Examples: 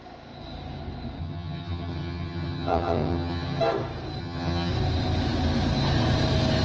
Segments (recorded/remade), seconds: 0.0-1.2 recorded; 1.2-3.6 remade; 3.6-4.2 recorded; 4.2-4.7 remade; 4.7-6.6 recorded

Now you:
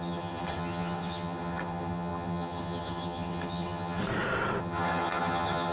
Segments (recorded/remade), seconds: 0.0-4.0 remade; 4.0-4.6 recorded; 4.6-5.7 remade

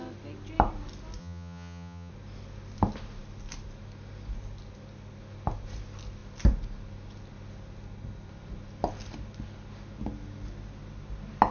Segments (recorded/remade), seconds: 0.0-1.2 recorded; 1.2-2.1 remade; 2.1-11.5 recorded

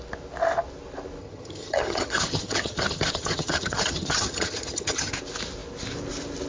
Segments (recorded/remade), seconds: 0.0-1.2 recorded; 1.2-5.1 remade; 5.1-6.5 recorded

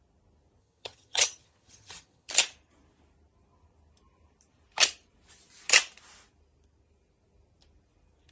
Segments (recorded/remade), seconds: 0.0-0.6 recorded; 0.6-2.3 remade; 2.3-8.3 recorded

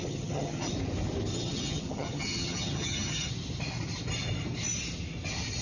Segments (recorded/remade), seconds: 0.0-0.7 remade; 0.7-1.3 recorded; 1.3-3.3 remade; 3.3-5.6 recorded